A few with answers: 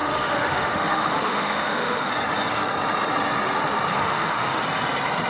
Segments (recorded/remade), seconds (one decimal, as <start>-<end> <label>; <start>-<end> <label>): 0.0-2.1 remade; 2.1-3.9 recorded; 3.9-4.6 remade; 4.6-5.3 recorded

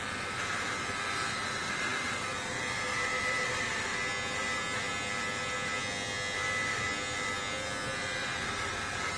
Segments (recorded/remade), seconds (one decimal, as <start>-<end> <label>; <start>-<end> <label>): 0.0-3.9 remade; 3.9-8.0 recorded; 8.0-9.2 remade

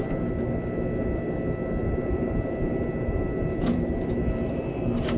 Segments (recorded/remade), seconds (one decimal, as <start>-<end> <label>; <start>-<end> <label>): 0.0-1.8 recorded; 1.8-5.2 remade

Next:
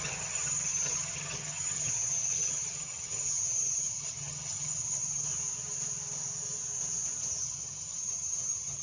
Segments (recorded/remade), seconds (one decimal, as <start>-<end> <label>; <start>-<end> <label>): 0.0-5.3 remade; 5.3-7.4 recorded; 7.4-8.8 remade